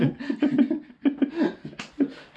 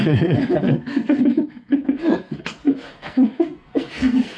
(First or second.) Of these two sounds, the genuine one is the first